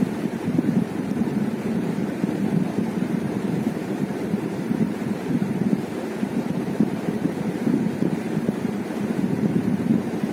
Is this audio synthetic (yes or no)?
yes